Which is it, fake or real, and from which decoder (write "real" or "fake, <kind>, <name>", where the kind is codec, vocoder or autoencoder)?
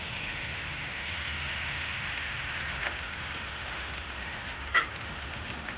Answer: fake, autoencoder, DAC-VAE